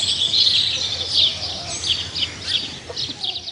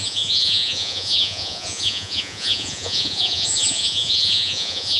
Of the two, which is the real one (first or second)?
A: first